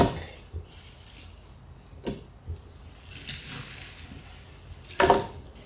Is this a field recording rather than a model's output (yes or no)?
yes